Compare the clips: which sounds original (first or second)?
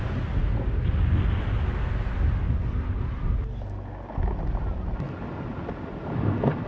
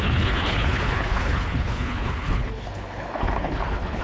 first